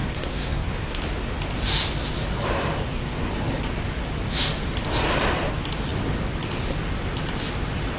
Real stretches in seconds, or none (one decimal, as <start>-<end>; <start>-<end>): 1.0-2.8; 3.3-8.0